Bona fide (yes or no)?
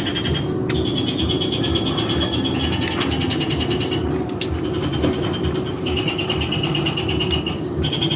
yes